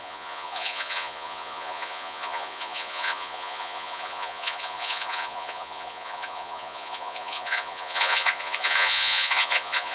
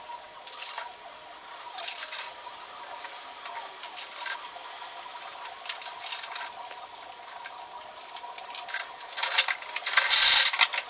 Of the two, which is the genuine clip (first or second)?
second